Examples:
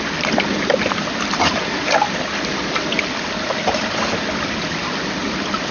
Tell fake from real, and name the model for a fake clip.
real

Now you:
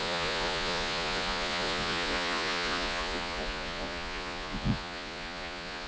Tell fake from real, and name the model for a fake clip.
fake, vocoder, Vocos